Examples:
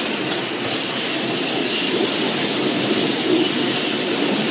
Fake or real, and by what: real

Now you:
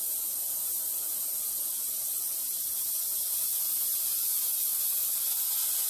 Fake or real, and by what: real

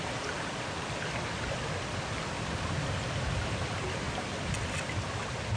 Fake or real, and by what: real